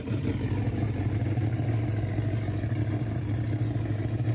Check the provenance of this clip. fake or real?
fake